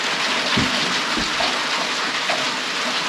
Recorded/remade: recorded